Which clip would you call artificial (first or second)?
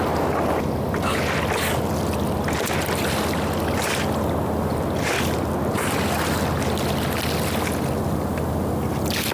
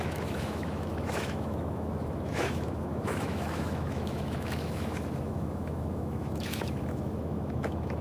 second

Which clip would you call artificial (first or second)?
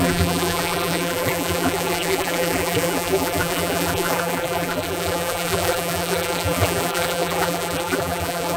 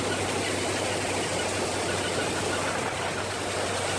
first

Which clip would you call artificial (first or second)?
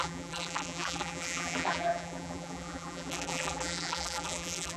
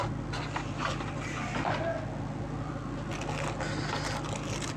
first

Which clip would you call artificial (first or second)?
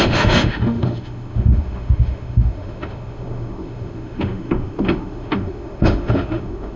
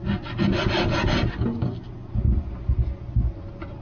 first